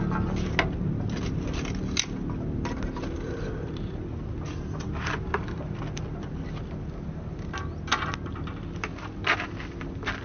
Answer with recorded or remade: recorded